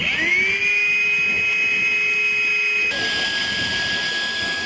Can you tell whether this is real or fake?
real